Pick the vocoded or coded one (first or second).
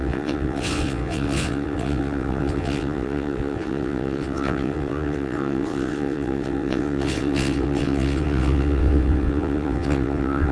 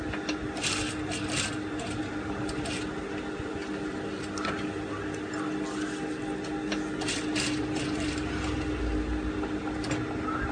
first